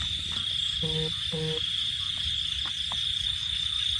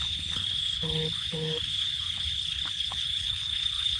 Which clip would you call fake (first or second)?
second